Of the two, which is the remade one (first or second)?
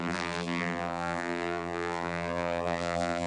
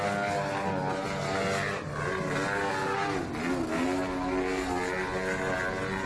first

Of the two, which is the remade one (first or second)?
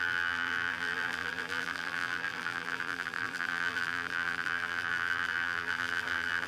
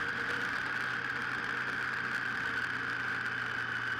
first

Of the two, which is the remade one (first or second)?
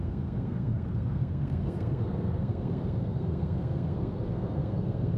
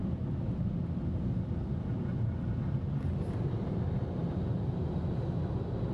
first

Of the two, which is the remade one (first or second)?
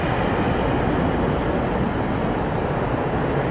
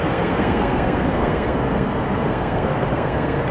second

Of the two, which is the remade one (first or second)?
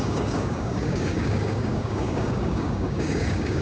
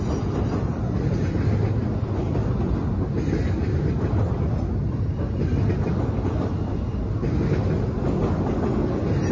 first